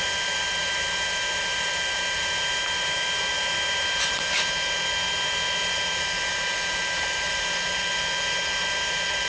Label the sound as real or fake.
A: real